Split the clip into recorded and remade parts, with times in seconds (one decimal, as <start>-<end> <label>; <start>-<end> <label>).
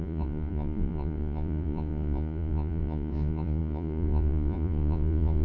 0.0-5.4 remade